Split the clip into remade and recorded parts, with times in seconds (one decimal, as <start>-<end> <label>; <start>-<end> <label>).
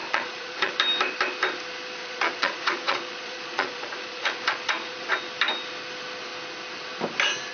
0.0-0.7 remade; 0.7-2.0 recorded; 2.0-5.1 remade; 5.1-7.5 recorded